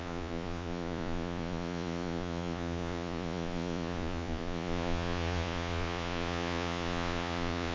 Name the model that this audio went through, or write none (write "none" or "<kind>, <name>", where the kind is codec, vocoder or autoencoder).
vocoder, Vocos